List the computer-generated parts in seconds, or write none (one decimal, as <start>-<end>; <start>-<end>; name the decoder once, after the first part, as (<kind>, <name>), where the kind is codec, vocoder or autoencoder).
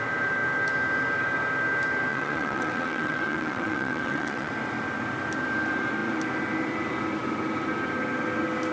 2.1-4.5 (vocoder, WaveNeXt)